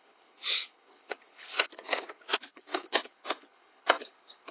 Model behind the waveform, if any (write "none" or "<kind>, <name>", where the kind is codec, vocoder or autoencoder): codec, HILCodec